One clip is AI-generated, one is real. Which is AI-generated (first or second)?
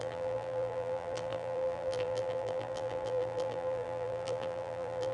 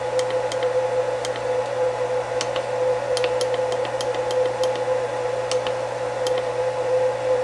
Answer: first